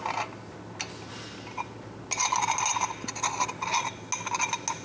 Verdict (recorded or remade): recorded